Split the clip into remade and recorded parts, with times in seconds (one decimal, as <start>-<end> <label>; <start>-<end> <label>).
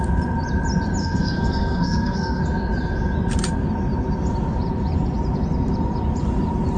0.0-1.0 recorded; 1.0-2.4 remade; 2.4-6.8 recorded